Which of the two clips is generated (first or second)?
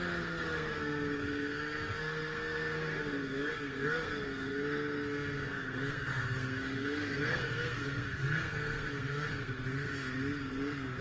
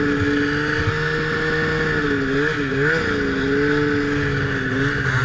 first